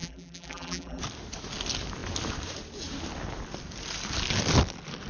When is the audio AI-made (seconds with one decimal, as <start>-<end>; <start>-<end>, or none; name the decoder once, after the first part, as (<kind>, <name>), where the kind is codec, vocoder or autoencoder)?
0.0-1.0 (vocoder, BigVGAN v2)